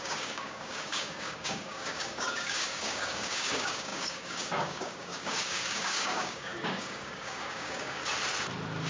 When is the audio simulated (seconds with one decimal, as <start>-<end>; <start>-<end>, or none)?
0.0-8.0

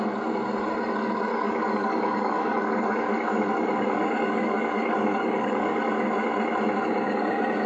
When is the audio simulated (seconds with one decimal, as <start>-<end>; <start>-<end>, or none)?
1.3-5.9

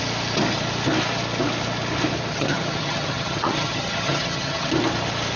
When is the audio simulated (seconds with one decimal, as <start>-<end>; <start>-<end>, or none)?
2.3-4.7